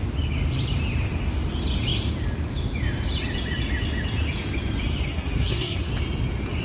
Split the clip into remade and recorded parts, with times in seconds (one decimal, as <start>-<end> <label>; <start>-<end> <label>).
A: 0.0-5.1 recorded; 5.1-5.9 remade; 5.9-6.6 recorded